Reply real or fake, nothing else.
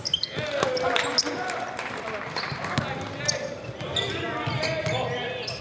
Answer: real